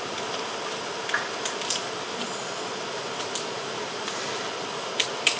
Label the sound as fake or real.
real